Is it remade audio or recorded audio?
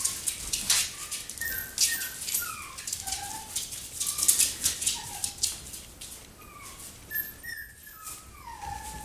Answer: recorded